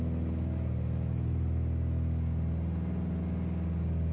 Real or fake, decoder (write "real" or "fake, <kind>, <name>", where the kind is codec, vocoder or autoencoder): real